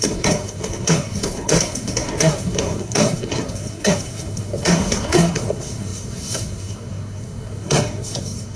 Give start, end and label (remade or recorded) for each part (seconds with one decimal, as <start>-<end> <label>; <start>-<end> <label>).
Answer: 0.0-8.6 remade